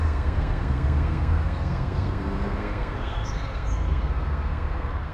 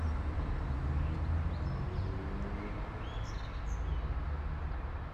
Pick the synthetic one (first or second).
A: first